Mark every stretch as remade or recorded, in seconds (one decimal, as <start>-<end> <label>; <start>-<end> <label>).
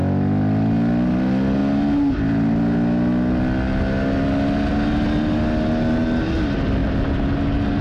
0.0-7.8 recorded